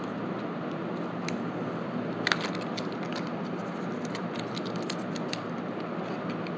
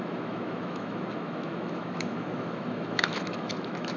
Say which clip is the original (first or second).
first